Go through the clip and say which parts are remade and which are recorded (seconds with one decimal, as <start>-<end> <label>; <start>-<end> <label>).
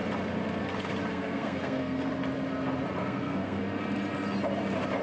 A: 0.0-1.1 recorded; 1.1-2.1 remade; 2.1-3.0 recorded; 3.0-3.6 remade; 3.6-5.0 recorded